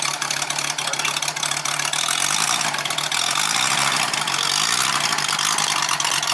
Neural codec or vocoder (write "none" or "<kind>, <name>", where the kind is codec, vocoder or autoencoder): none